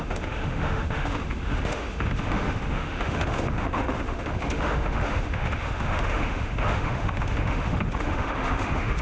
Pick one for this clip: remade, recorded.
remade